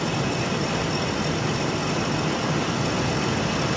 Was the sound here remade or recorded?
recorded